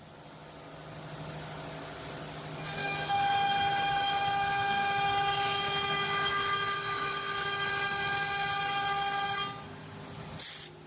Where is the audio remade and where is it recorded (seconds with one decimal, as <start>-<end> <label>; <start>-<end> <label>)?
0.0-2.8 recorded; 2.8-7.7 remade; 7.7-10.9 recorded